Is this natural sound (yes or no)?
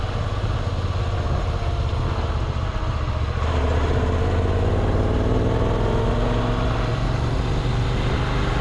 yes